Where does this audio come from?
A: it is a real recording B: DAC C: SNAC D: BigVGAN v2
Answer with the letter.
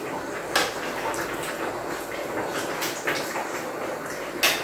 A